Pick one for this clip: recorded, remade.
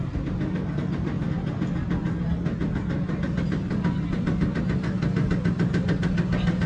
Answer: recorded